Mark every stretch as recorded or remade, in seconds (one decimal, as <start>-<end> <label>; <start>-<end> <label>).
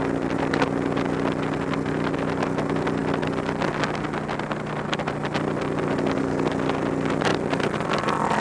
0.0-8.4 recorded